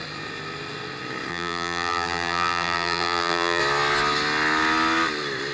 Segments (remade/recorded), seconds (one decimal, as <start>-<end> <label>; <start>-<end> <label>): 0.0-1.3 recorded; 1.3-3.6 remade; 3.6-5.5 recorded

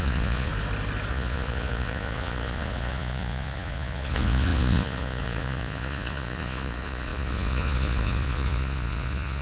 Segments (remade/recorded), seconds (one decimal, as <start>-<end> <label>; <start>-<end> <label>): 0.0-0.5 remade; 0.5-1.1 recorded; 1.1-9.4 remade

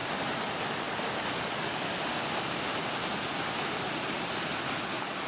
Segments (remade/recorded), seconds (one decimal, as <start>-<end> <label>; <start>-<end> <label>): 0.0-2.9 remade; 2.9-5.3 recorded

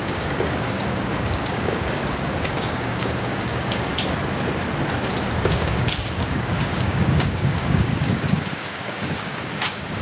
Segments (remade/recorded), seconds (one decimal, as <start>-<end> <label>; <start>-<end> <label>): 0.0-3.9 remade; 3.9-5.4 recorded; 5.4-10.0 remade